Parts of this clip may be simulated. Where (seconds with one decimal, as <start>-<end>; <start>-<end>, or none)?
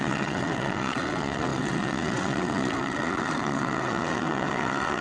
0.0-5.0